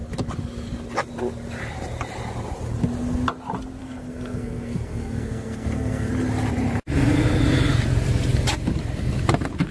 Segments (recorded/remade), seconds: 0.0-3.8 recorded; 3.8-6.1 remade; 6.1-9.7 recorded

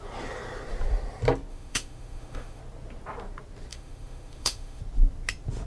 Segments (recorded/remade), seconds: 0.0-1.5 recorded; 1.5-2.6 remade; 2.6-3.7 recorded; 3.7-4.8 remade; 4.8-5.7 recorded

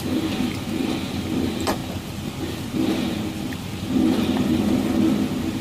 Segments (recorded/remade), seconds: 0.0-5.6 recorded

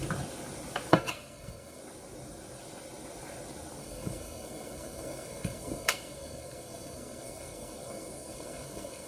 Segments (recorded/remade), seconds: 0.0-0.9 recorded; 0.9-1.8 remade; 1.8-3.8 recorded; 3.8-9.1 remade